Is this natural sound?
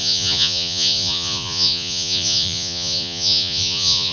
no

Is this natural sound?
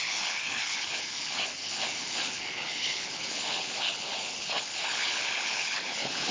no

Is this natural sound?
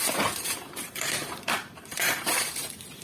no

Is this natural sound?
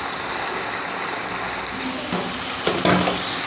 yes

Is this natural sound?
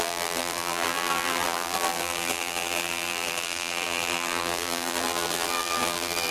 no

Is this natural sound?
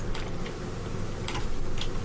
yes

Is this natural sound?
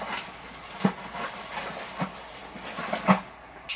yes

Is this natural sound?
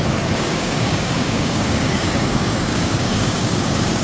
no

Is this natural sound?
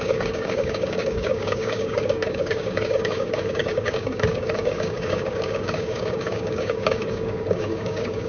no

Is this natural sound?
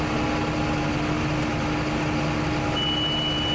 yes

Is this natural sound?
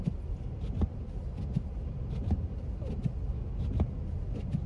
yes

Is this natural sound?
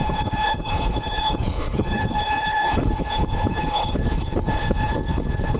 no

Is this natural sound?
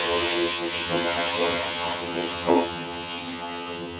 no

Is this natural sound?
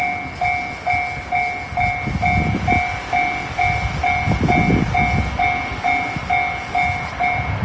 yes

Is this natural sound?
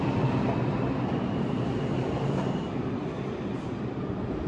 yes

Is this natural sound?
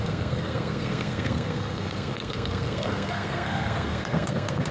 no